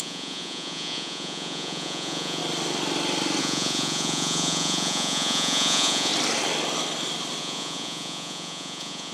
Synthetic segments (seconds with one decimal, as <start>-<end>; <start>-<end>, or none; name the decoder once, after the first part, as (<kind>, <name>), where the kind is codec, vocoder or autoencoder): 0.0-2.4 (vocoder, Vocos); 3.4-6.1; 7.4-9.1